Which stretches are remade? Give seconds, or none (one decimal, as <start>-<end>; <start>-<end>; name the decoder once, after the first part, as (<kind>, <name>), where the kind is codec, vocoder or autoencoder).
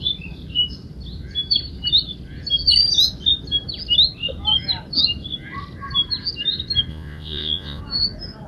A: 6.9-7.8 (vocoder, Vocos)